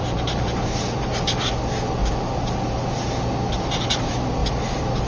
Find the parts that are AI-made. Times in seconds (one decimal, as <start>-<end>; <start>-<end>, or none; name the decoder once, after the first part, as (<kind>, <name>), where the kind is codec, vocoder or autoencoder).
none